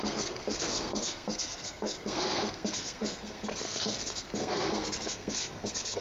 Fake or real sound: fake